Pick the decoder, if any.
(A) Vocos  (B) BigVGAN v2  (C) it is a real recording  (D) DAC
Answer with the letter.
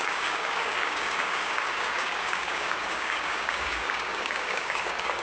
D